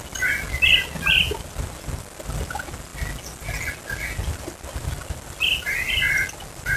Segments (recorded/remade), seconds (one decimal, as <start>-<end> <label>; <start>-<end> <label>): 0.0-6.8 recorded